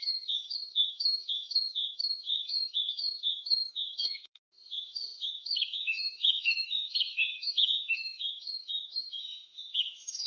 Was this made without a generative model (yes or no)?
no